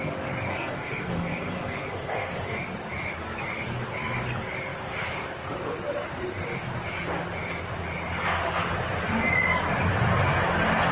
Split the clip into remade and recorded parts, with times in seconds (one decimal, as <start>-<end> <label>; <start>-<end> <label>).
0.0-0.5 recorded; 0.5-2.4 remade; 2.4-10.9 recorded